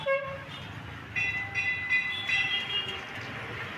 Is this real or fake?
real